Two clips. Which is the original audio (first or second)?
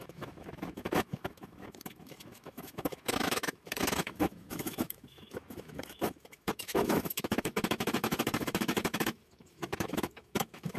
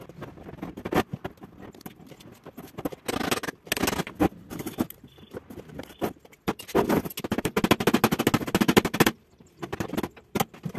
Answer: second